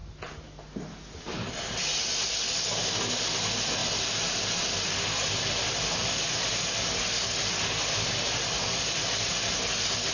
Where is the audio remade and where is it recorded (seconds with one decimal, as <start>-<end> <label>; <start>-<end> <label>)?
0.0-1.5 remade; 1.5-3.8 recorded; 3.8-5.3 remade; 5.3-10.1 recorded